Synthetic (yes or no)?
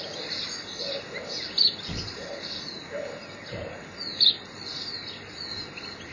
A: no